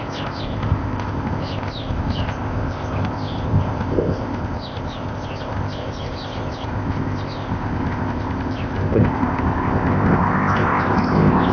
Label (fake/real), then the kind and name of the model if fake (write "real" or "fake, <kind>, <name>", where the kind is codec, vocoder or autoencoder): fake, codec, ZipCodec